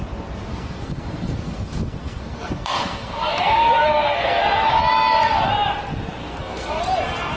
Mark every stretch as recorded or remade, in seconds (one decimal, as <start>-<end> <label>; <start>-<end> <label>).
0.0-0.5 recorded; 0.5-4.7 remade; 4.7-6.2 recorded; 6.2-6.8 remade; 6.8-7.4 recorded

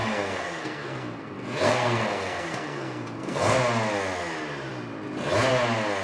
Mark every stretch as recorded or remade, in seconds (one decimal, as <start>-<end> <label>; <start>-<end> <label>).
0.0-3.6 remade; 3.6-6.0 recorded

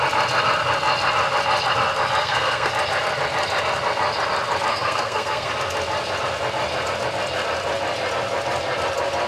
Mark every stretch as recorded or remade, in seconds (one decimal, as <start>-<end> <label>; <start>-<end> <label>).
0.0-2.2 recorded; 2.2-2.7 remade; 2.7-4.7 recorded; 4.7-5.5 remade; 5.5-9.3 recorded

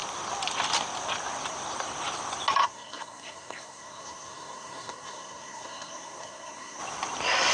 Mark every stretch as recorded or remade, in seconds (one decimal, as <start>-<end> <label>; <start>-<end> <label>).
0.0-2.6 recorded; 2.6-6.8 remade; 6.8-7.5 recorded

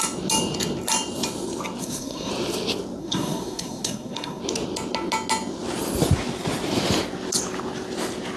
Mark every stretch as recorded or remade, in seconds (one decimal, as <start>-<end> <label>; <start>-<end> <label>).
0.0-1.8 recorded; 1.8-2.3 remade; 2.3-3.0 recorded; 3.0-4.4 remade; 4.4-8.4 recorded

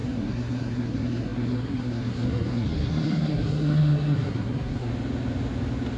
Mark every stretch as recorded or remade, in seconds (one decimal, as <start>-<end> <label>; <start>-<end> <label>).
0.0-4.9 remade; 4.9-6.0 recorded

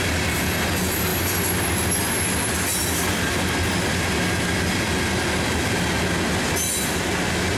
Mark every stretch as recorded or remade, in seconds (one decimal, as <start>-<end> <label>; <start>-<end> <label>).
0.0-7.6 recorded

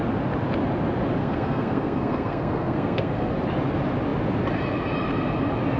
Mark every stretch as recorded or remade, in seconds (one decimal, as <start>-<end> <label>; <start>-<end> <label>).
0.0-1.2 recorded; 1.2-3.3 remade; 3.3-5.8 recorded